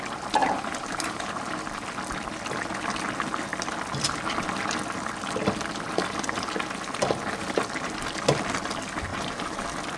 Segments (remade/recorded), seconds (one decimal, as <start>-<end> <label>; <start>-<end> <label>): 0.0-0.4 recorded; 0.4-1.4 remade; 1.4-9.1 recorded; 9.1-10.0 remade